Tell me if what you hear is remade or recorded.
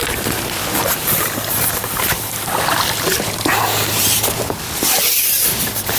remade